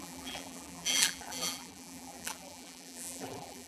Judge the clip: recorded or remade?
remade